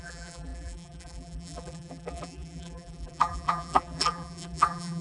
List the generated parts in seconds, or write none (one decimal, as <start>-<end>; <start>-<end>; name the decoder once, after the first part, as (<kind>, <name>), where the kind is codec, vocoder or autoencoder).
0.0-5.0 (vocoder, BigVGAN v2)